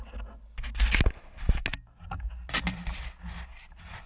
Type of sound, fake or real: real